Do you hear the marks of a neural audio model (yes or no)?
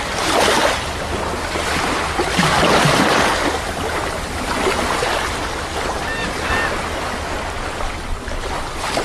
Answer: no